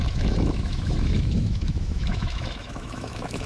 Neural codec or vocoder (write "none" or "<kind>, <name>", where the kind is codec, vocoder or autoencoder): autoencoder, DAC-VAE